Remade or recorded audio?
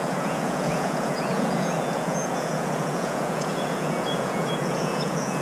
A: remade